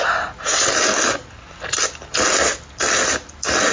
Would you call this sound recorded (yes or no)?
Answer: yes